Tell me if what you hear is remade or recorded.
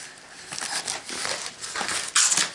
recorded